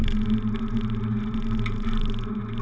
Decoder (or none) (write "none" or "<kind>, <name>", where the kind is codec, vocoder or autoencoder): none